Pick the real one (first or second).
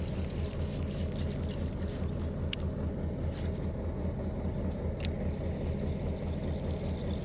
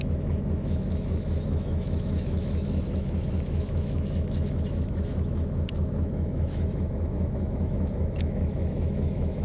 first